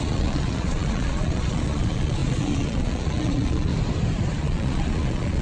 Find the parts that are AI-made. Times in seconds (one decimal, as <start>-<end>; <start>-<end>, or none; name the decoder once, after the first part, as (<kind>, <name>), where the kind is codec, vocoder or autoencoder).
0.0-3.7 (vocoder, Vocos); 4.4-5.4